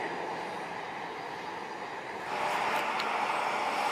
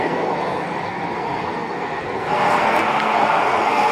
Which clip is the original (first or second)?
first